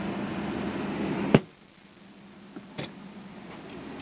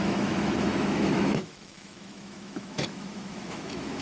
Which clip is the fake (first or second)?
second